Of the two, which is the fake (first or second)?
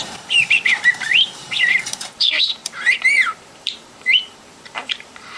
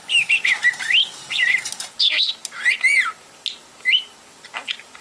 first